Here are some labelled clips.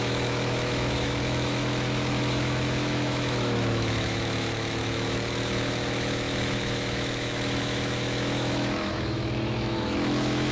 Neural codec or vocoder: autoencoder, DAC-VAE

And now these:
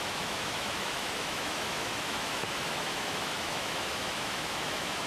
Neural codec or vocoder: autoencoder, DAC-VAE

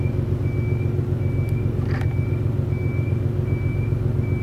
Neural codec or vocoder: none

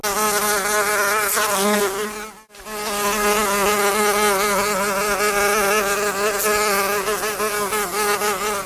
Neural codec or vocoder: none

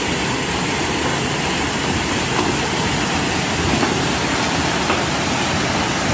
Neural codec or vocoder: none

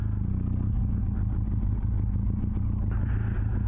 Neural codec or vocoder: none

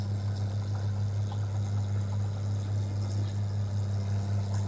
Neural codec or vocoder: none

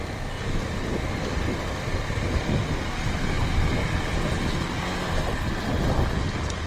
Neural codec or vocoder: none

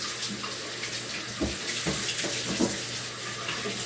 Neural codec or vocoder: none